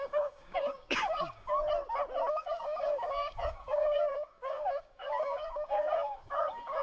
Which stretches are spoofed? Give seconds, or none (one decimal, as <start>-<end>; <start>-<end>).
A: 0.0-1.6; 2.3-6.8